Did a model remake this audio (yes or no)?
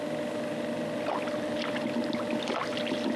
no